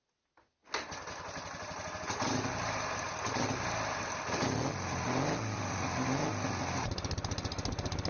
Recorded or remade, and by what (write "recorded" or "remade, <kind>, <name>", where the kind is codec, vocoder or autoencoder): recorded